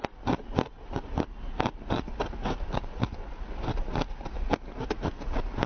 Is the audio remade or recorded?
recorded